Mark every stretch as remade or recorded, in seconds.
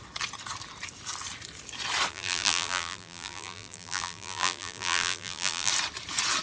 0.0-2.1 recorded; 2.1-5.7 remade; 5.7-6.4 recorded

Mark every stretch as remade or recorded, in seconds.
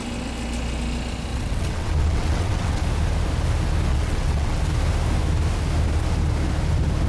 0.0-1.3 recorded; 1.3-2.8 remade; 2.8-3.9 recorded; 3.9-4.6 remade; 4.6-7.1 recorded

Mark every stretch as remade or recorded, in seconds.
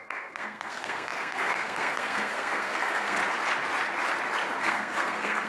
0.0-3.2 remade; 3.2-4.6 recorded; 4.6-5.5 remade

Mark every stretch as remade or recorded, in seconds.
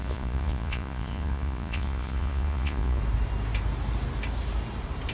0.0-3.0 remade; 3.0-5.1 recorded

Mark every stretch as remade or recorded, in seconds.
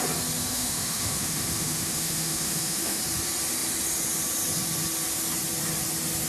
0.0-0.5 recorded; 0.5-3.0 remade; 3.0-6.3 recorded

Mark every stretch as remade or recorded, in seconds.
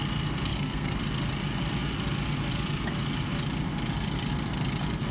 0.0-0.5 recorded; 0.5-1.0 remade; 1.0-5.1 recorded